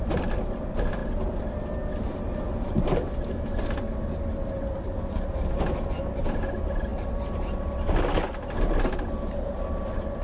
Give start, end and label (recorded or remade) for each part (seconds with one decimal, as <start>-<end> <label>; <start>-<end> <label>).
0.0-10.2 recorded